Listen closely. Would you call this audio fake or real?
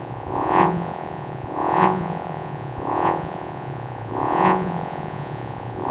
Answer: fake